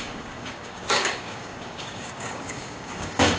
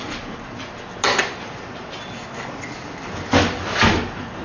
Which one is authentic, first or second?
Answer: second